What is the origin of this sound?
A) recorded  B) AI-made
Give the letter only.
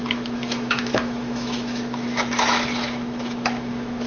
B